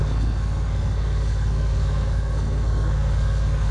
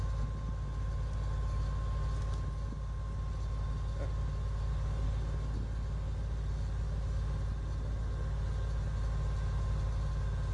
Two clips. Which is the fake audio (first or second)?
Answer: first